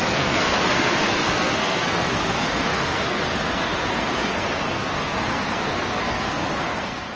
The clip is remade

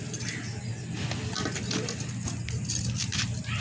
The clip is recorded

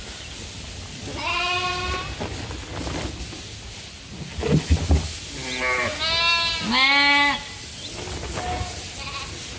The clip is recorded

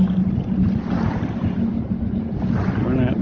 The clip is recorded